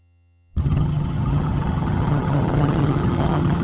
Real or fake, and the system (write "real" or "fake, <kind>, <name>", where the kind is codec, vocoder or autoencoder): fake, vocoder, HiFi-GAN